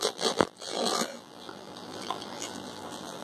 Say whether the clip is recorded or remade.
remade